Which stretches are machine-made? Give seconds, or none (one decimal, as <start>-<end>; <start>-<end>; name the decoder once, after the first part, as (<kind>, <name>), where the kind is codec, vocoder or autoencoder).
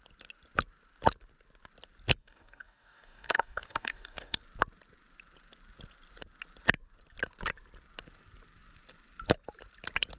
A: 2.2-4.4 (codec, DAC)